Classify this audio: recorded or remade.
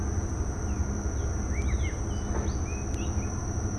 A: recorded